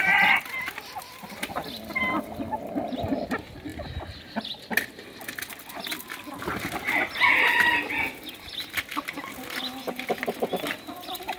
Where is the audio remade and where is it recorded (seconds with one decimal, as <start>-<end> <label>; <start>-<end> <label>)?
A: 0.0-11.4 recorded